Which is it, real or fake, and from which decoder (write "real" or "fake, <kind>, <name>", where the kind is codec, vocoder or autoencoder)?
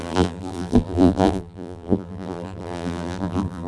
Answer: fake, vocoder, BigVGAN v2